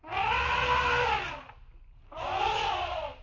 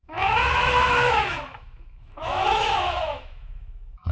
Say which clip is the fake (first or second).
second